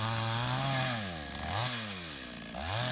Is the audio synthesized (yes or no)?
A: no